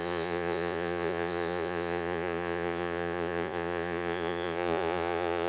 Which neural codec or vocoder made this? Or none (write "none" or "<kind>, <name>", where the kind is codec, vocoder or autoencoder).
vocoder, Vocos